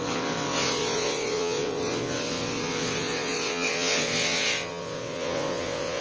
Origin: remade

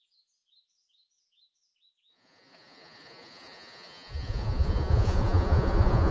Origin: remade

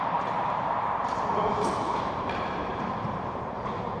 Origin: remade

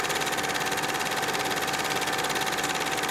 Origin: recorded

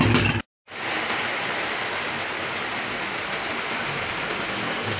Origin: recorded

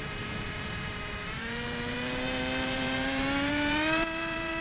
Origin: remade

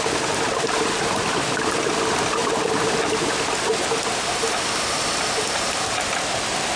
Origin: recorded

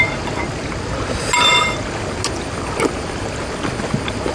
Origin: recorded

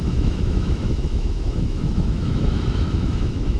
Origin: remade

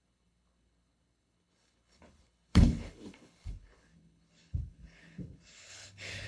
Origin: remade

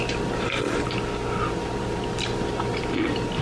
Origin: recorded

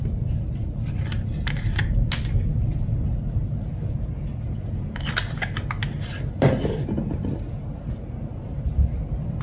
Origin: recorded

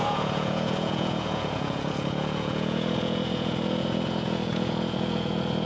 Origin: remade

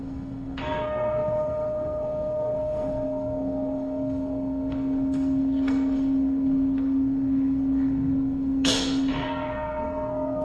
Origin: remade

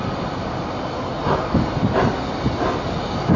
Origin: recorded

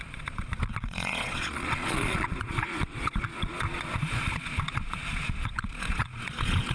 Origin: remade